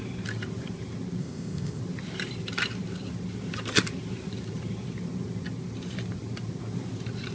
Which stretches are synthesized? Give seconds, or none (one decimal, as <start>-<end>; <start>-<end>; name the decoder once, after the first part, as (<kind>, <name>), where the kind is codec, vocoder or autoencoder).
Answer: 1.2-1.8 (codec, ZipCodec)